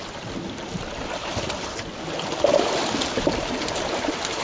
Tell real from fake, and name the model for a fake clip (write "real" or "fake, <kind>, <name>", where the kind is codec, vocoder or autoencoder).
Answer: real